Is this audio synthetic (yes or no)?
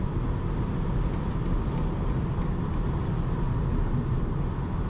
no